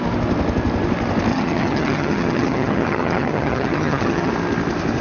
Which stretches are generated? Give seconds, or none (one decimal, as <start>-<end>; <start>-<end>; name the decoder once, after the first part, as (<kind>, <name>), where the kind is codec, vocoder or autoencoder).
1.3-4.3 (vocoder, HiFi-GAN)